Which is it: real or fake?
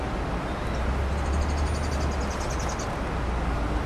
real